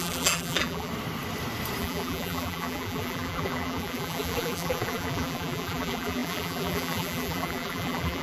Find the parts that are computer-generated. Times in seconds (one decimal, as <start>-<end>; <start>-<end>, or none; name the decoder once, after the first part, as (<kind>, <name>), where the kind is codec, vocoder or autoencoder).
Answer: 0.0-0.9 (vocoder, BigVGAN v2); 1.8-8.2